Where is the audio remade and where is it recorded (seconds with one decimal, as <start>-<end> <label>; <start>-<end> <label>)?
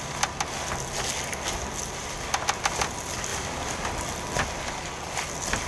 0.0-5.7 recorded